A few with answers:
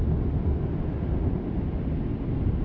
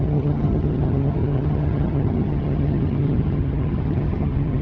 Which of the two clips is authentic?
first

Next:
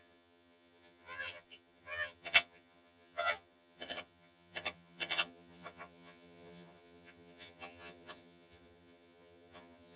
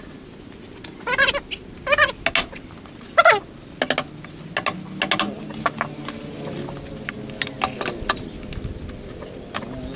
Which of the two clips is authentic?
second